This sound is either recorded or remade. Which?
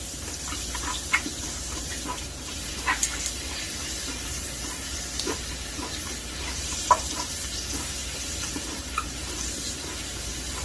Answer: remade